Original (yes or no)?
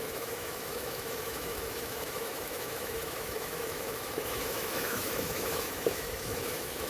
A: no